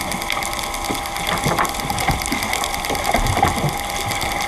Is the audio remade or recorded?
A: recorded